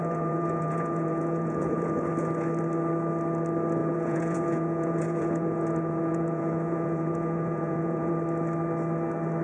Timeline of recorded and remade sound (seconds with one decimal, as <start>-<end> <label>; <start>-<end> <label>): 0.0-2.1 remade; 2.1-3.8 recorded; 3.8-8.1 remade; 8.1-9.4 recorded